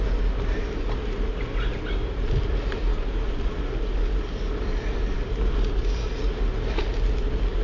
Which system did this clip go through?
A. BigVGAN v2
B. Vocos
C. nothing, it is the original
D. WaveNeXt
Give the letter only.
C